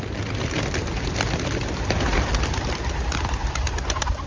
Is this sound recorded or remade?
recorded